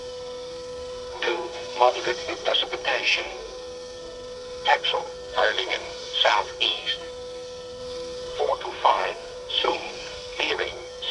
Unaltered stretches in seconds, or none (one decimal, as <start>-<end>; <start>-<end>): none